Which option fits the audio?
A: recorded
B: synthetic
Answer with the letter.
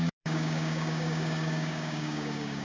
B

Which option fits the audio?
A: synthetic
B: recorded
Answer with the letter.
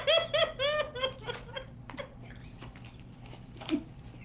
B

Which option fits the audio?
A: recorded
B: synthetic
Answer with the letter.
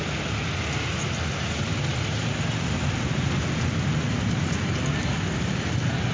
A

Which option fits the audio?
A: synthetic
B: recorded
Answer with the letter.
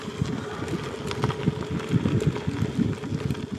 B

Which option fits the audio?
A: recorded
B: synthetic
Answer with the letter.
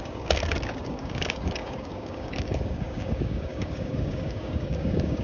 B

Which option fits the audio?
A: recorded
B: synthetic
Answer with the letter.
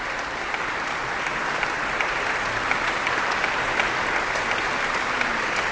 A